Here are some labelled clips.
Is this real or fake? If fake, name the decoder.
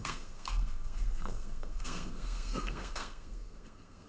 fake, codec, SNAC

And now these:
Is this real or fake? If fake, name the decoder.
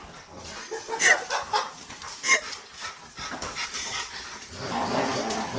real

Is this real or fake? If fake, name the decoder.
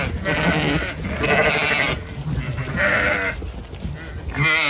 real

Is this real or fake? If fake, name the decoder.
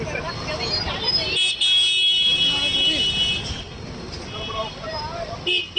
real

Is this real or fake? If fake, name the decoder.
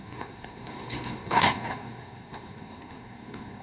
fake, codec, SNAC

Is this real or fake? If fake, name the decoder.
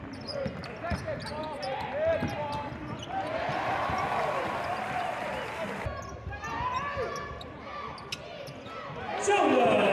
real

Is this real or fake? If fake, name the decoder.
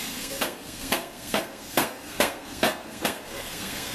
fake, codec, SNAC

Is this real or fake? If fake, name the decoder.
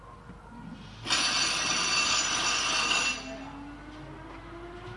real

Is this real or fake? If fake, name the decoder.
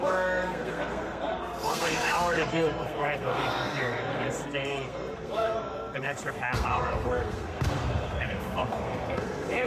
fake, codec, SNAC